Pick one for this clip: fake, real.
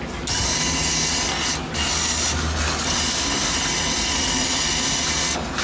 real